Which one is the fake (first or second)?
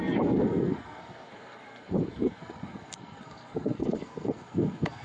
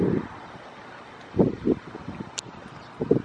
first